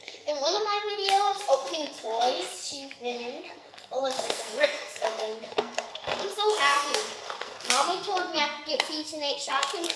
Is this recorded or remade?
remade